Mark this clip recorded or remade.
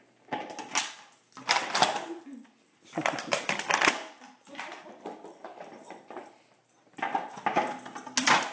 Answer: recorded